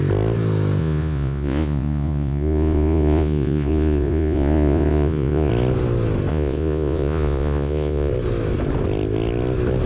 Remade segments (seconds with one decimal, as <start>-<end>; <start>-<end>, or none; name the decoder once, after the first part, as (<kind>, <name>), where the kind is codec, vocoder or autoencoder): 0.8-5.5 (vocoder, Vocos); 6.3-8.1